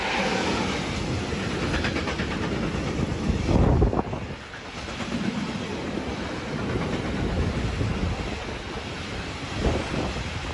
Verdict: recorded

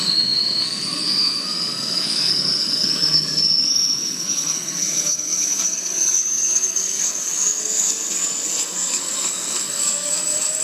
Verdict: remade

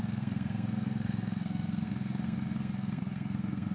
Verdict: remade